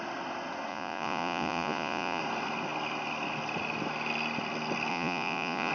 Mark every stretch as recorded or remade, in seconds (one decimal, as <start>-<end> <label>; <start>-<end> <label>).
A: 0.0-0.7 recorded; 0.7-2.2 remade; 2.2-4.9 recorded; 4.9-5.7 remade